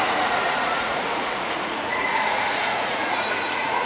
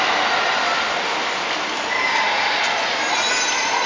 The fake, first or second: first